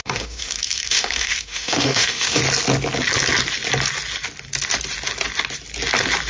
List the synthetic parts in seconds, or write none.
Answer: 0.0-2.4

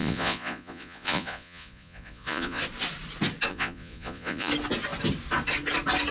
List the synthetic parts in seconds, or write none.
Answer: 0.0-2.6; 3.5-4.5

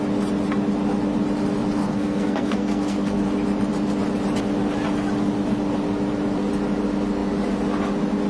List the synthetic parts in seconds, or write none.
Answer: 1.8-3.2

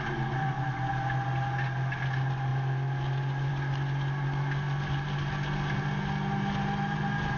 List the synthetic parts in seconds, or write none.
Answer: none

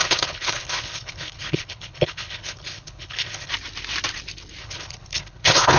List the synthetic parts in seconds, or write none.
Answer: 0.0-3.5; 4.6-5.8